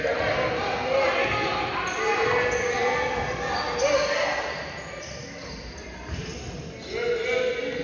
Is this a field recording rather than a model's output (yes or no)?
yes